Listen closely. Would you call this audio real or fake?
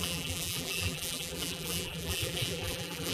fake